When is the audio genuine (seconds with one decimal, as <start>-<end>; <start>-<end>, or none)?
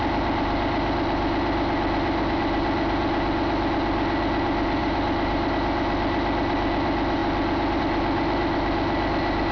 0.0-4.8; 5.5-9.5